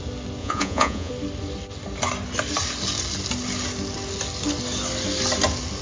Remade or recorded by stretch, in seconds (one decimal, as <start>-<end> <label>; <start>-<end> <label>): 0.0-0.4 recorded; 0.4-1.1 remade; 1.1-5.8 recorded